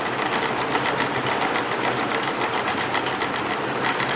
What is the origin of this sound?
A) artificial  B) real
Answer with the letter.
B